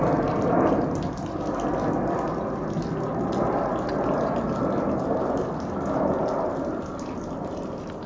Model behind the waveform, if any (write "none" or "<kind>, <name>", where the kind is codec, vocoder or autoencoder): none